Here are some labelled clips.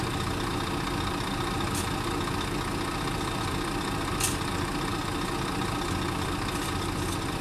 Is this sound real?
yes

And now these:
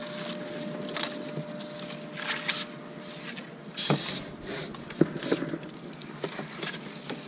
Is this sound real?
yes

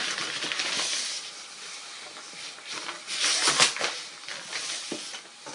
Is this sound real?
yes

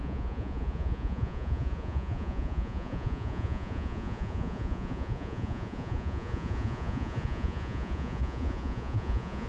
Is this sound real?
no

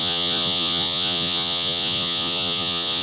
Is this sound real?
no